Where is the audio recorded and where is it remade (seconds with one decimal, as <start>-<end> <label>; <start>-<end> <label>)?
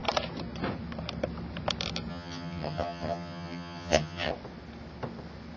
0.0-2.1 recorded; 2.1-4.3 remade; 4.3-5.6 recorded